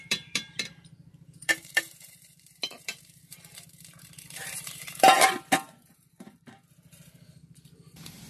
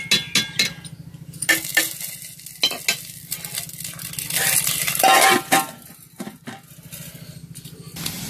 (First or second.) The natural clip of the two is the second